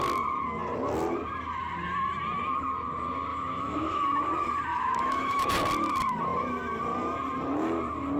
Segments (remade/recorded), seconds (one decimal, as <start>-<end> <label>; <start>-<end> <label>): 0.0-3.3 recorded; 3.3-4.2 remade; 4.2-4.7 recorded; 4.7-5.5 remade; 5.5-8.2 recorded